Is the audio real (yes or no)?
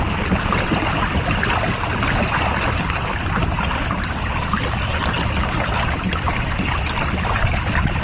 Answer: yes